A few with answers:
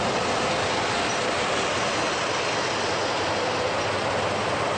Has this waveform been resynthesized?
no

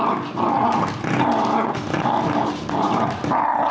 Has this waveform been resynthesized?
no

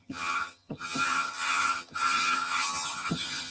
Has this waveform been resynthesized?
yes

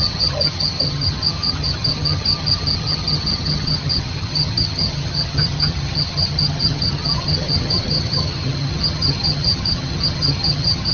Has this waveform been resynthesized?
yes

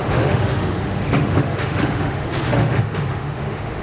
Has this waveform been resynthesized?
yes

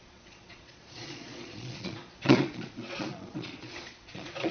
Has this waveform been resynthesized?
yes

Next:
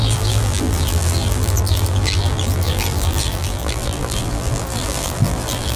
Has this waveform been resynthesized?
yes